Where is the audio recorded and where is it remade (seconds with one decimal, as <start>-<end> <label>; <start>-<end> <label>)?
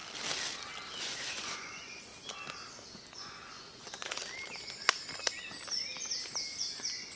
0.0-1.0 recorded; 1.0-2.1 remade; 2.1-3.1 recorded; 3.1-4.2 remade; 4.2-6.5 recorded; 6.5-7.2 remade